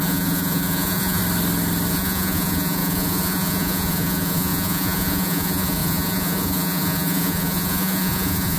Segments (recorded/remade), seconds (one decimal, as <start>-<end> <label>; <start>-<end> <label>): 0.0-1.2 remade; 1.2-1.9 recorded; 1.9-8.6 remade